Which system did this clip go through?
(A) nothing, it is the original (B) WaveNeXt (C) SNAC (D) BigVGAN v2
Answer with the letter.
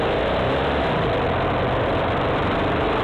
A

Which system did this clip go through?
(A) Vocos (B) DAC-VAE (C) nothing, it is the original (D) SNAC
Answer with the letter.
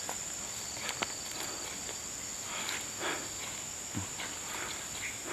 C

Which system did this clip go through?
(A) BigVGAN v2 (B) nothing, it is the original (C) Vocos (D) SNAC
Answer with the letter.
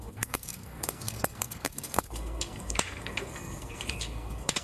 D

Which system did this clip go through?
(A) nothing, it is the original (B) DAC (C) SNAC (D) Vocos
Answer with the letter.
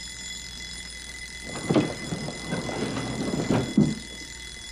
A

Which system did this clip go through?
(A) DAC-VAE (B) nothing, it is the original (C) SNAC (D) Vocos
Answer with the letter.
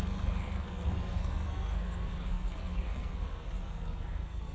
C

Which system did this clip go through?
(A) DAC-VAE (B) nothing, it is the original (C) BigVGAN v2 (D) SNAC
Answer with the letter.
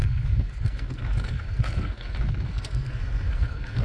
D